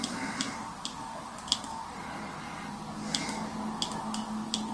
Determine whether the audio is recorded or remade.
recorded